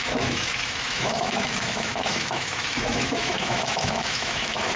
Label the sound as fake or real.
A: fake